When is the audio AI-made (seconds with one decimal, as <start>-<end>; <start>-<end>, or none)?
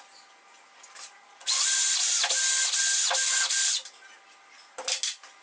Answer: none